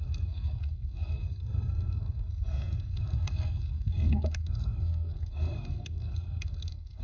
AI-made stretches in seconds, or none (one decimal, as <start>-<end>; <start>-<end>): 0.0-7.0